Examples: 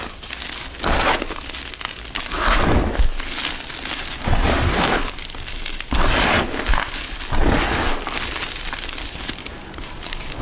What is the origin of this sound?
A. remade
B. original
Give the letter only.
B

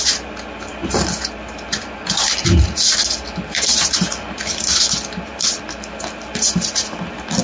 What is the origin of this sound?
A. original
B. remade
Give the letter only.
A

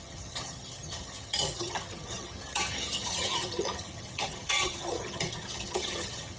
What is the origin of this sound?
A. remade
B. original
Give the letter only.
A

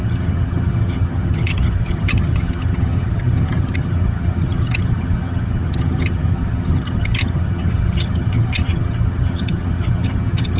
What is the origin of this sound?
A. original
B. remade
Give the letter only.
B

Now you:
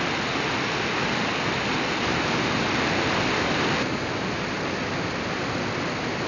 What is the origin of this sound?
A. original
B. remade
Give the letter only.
A